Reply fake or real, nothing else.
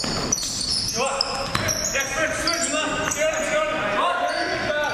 real